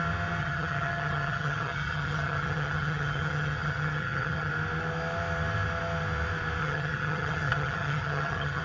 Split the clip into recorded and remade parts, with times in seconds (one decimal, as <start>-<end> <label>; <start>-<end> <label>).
0.0-0.4 recorded; 0.4-4.5 remade; 4.5-6.6 recorded; 6.6-8.6 remade